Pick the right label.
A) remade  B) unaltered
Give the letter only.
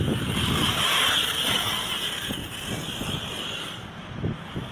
B